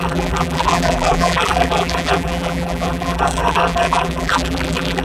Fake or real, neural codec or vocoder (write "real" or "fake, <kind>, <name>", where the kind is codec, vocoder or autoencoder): fake, vocoder, BigVGAN v2